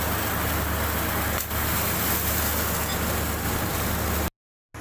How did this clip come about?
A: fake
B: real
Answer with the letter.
B